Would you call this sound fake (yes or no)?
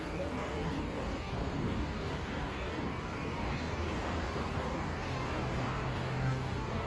yes